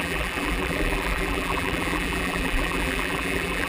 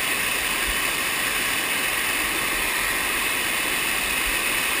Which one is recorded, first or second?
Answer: second